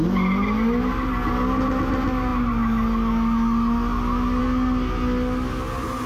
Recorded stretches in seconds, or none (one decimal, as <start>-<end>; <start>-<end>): 0.0-6.1